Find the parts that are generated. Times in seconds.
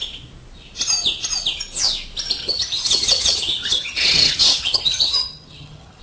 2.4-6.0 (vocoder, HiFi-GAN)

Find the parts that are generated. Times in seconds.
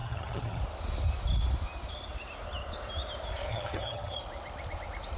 0.0-0.6 (vocoder, HiFi-GAN); 3.5-4.2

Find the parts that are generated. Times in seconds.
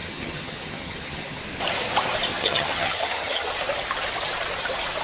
0.0-1.4 (vocoder, HiFi-GAN); 2.3-3.5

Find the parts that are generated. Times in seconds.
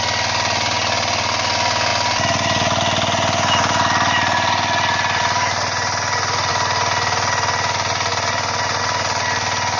none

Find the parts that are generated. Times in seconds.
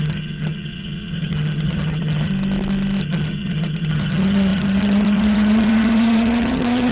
0.0-2.3 (vocoder, HiFi-GAN); 3.0-6.9